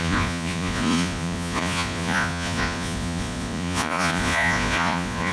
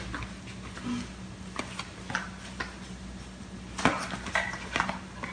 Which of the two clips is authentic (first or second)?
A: second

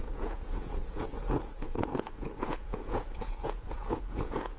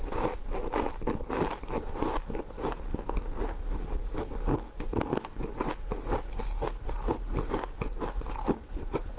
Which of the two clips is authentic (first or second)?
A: second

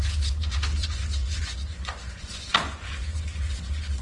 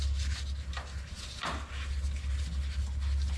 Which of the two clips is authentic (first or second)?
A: second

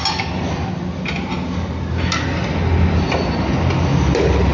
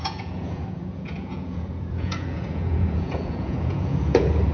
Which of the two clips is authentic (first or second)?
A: first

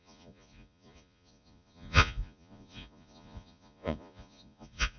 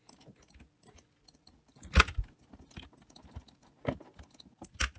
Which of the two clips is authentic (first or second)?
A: second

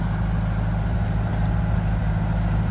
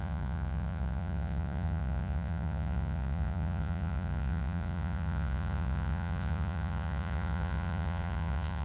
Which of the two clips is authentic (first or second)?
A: first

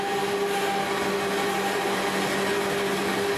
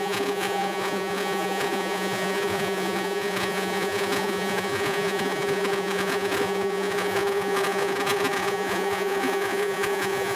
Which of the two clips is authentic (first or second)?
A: first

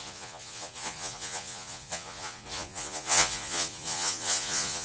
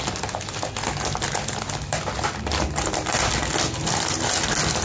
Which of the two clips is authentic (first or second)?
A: second